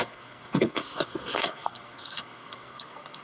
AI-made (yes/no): yes